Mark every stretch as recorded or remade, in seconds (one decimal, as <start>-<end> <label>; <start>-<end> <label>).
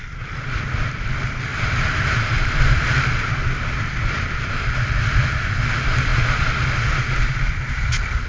0.0-1.5 recorded; 1.5-3.3 remade; 3.3-8.3 recorded